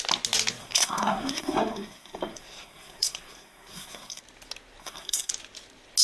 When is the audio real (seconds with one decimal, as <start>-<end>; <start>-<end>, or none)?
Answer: 0.0-0.6; 4.2-4.8; 5.3-6.0